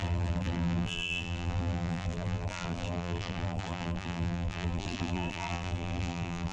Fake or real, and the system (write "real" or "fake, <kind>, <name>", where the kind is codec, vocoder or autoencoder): fake, vocoder, BigVGAN v2